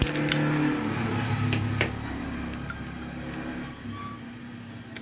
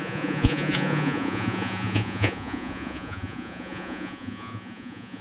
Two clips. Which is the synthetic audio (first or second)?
second